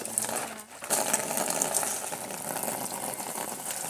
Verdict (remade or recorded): recorded